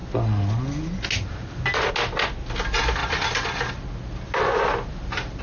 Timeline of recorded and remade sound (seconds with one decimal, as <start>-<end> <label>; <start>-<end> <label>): 0.0-5.4 recorded